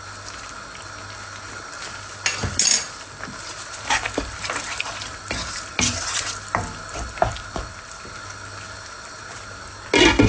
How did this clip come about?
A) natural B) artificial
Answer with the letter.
A